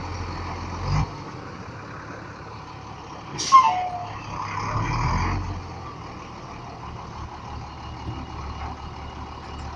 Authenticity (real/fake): real